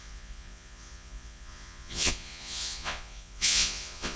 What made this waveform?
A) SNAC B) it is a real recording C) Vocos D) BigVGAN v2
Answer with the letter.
C